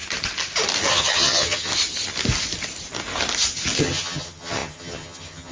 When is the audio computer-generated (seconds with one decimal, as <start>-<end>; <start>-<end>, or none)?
0.9-1.7; 3.8-5.5